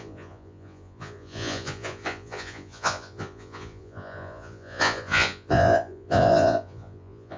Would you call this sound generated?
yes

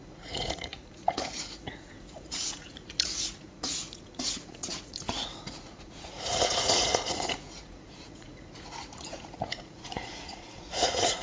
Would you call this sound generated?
yes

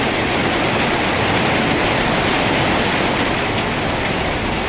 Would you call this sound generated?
no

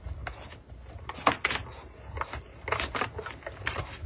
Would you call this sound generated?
no